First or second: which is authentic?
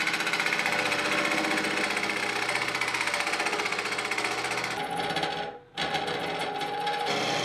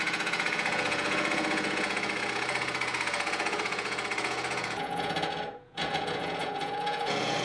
first